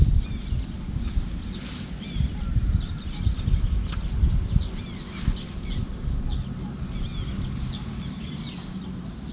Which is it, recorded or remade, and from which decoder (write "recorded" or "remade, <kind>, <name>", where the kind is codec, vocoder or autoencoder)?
recorded